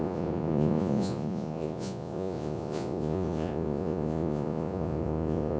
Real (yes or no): no